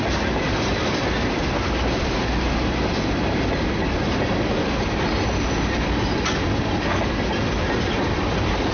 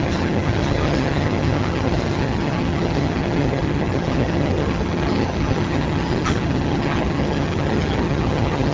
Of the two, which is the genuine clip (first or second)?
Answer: first